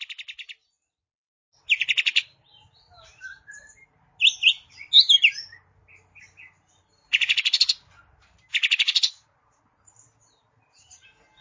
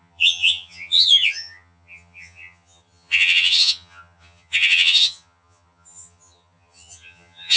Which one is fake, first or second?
second